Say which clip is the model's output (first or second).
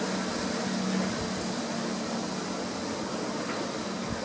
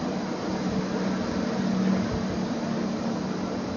second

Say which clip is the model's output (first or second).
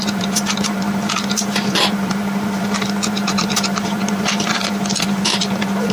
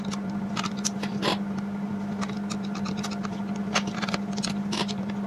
first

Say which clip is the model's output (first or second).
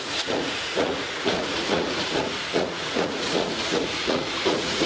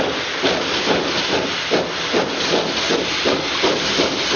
first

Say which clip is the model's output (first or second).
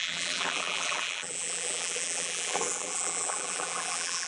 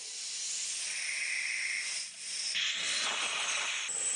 first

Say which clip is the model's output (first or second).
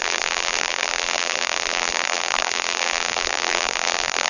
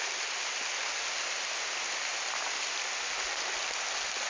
first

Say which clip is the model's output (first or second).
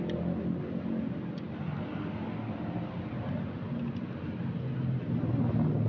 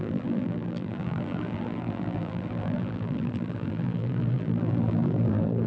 second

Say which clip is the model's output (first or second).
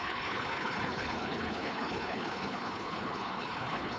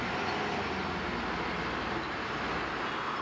first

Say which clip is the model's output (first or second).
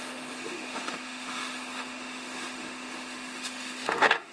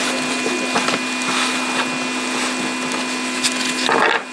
first